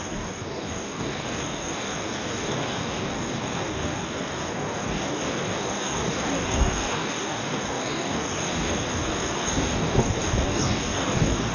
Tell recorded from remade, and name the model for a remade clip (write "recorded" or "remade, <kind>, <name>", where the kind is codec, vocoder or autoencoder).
remade, codec, DAC